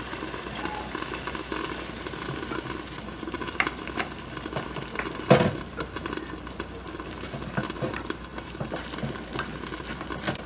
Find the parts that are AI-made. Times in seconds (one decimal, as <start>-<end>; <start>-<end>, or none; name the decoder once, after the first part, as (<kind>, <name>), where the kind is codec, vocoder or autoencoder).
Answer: 0.0-10.5 (vocoder, BigVGAN v2)